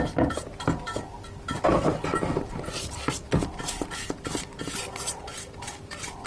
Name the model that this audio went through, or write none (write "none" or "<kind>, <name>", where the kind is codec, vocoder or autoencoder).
none